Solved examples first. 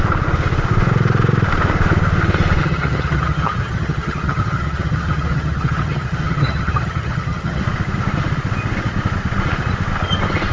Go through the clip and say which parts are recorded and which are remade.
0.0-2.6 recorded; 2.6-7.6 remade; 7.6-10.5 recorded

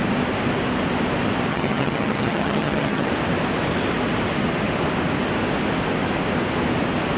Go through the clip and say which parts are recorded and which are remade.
0.0-1.5 recorded; 1.5-3.1 remade; 3.1-7.2 recorded

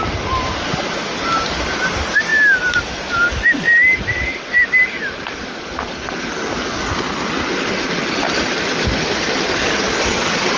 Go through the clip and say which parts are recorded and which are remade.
0.0-10.6 recorded

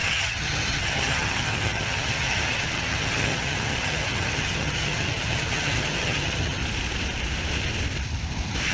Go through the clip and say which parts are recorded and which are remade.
0.0-6.6 remade; 6.6-8.7 recorded

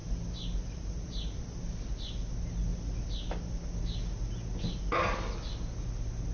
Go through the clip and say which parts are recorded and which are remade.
0.0-6.3 recorded

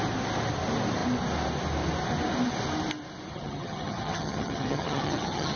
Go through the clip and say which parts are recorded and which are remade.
0.0-3.3 recorded; 3.3-5.6 remade

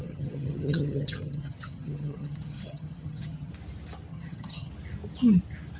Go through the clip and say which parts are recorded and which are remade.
0.0-3.5 remade; 3.5-4.1 recorded; 4.1-4.7 remade; 4.7-5.8 recorded